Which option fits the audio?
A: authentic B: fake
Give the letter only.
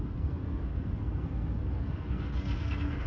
B